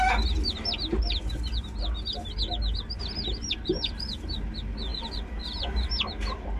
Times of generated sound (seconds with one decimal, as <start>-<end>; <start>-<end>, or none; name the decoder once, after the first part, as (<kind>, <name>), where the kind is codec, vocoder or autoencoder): none